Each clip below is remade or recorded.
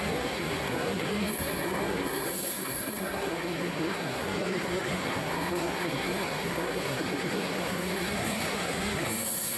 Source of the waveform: remade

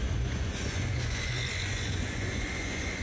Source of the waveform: remade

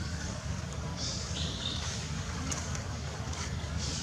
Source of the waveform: remade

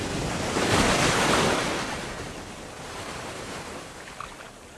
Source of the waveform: recorded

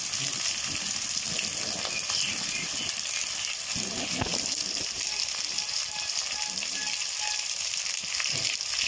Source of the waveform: recorded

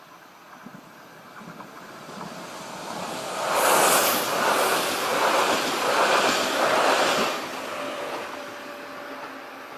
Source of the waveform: recorded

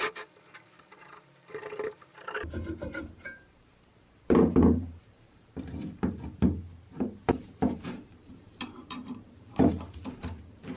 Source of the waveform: remade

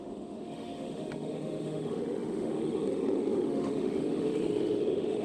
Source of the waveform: remade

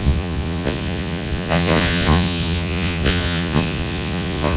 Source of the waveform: remade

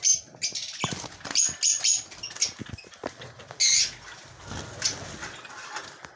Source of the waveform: recorded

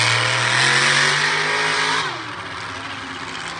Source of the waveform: recorded